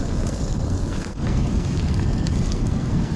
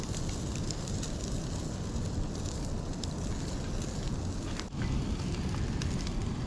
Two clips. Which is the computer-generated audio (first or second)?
first